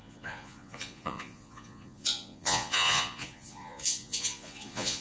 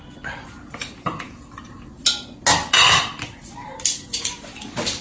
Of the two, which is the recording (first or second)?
second